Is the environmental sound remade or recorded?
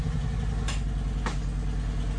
recorded